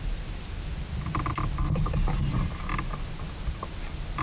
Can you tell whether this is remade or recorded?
recorded